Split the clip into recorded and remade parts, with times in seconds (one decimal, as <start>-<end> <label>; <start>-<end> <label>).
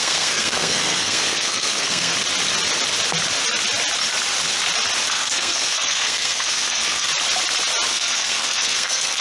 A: 0.0-2.1 remade; 2.1-5.1 recorded; 5.1-7.1 remade; 7.1-7.9 recorded; 7.9-9.2 remade